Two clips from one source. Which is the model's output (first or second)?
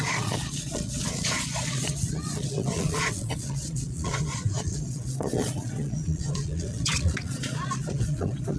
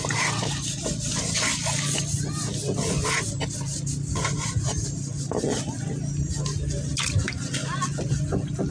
first